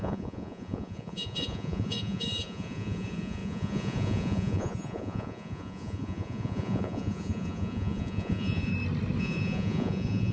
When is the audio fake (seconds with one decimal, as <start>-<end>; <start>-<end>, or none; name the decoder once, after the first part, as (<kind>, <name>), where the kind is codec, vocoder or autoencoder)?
0.0-8.7 (vocoder, Vocos); 9.2-10.3